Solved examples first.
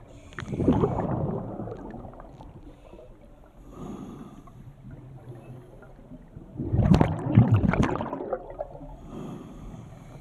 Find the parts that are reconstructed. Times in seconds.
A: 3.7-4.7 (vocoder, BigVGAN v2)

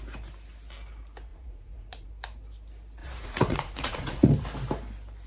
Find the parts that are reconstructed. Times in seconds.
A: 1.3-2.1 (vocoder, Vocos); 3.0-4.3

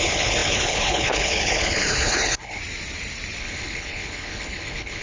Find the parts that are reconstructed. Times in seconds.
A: 0.0-2.6 (codec, HILCodec); 3.4-5.0